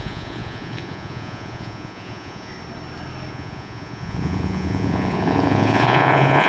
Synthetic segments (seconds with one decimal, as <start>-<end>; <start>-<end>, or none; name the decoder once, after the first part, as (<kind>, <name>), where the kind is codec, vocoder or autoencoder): 0.0-2.5 (vocoder, Vocos); 3.3-6.5